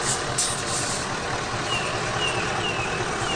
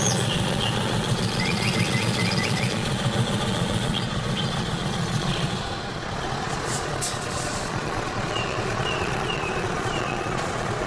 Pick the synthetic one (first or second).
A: second